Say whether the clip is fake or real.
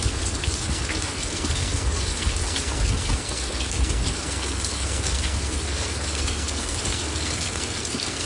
fake